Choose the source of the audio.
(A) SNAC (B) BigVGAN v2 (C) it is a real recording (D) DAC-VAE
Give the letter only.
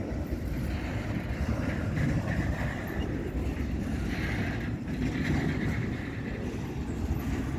B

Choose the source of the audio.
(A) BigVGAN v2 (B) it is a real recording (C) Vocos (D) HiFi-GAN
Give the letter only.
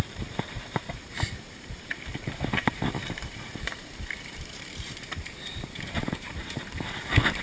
A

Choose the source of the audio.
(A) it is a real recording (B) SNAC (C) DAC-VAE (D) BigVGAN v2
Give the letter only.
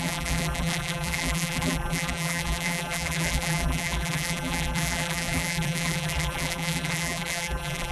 D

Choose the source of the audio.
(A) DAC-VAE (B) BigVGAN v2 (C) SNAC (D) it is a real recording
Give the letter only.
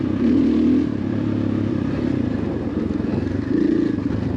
B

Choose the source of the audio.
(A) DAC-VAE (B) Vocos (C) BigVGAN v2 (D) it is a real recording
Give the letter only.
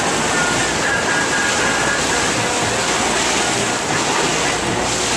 D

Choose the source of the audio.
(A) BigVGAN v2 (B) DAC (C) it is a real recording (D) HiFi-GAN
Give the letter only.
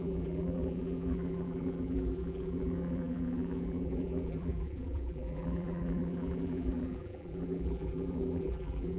A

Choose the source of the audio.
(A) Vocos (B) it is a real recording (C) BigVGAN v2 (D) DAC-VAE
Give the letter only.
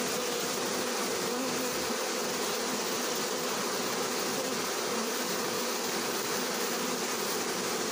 B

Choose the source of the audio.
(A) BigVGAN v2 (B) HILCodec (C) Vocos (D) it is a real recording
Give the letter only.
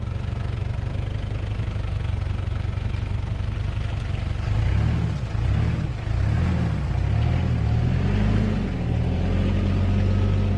D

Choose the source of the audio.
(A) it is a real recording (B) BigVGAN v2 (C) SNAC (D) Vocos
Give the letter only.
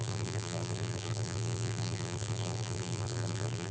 B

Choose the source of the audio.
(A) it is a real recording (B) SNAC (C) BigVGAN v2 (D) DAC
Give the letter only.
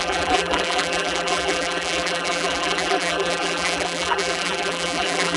C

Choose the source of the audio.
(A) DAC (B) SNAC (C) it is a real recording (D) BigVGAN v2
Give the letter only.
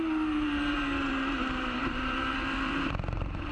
D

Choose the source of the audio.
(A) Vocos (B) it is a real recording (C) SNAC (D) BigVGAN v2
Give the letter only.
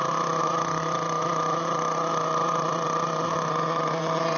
D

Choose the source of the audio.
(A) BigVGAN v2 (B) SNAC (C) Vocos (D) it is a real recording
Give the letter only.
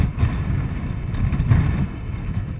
D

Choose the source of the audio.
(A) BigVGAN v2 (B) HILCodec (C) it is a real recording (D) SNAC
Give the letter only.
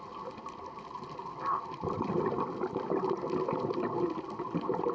C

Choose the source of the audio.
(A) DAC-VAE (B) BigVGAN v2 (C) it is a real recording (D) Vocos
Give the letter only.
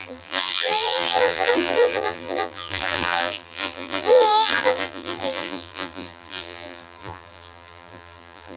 B